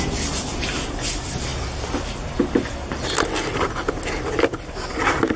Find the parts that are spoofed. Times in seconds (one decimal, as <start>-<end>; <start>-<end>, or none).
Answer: none